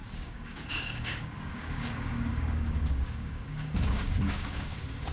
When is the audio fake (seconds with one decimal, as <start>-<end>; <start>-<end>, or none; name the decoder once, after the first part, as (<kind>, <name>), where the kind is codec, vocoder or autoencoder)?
0.0-5.1 (codec, DAC)